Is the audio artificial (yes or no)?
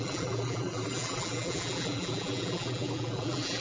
yes